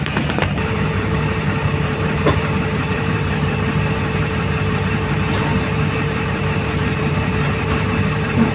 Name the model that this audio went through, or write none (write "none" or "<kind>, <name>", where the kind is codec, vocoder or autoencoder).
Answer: vocoder, BigVGAN v2